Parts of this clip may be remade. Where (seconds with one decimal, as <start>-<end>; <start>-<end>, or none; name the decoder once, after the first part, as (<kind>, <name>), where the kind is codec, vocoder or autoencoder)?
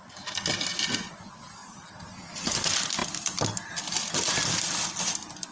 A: none